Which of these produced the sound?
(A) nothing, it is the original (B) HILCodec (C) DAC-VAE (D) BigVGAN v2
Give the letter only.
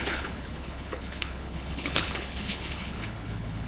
B